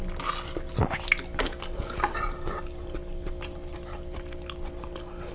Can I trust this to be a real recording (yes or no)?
yes